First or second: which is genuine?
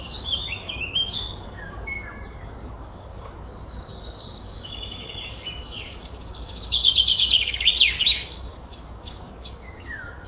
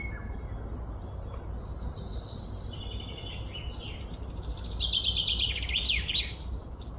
second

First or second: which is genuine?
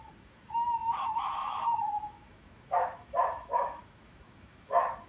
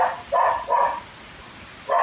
second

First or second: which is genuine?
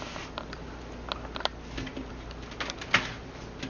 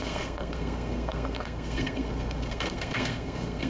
first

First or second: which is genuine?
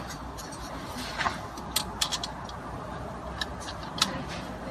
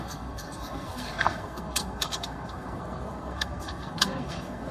first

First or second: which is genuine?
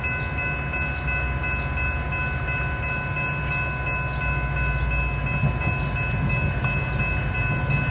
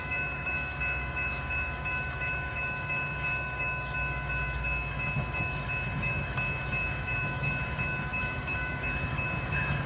first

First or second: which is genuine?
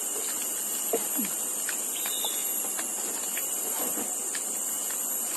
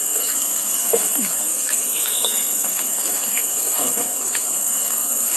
first